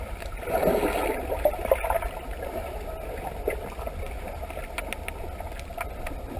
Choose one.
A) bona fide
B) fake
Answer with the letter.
A